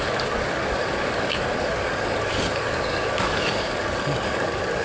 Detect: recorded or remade remade